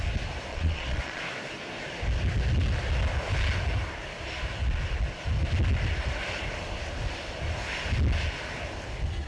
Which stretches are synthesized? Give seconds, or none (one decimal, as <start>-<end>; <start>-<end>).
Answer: 0.5-1.2